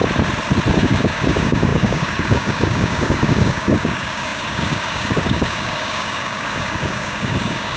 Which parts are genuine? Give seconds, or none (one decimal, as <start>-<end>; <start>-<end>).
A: 0.0-0.7